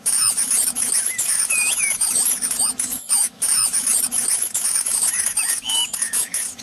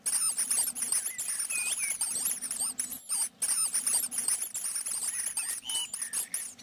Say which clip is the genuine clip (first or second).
second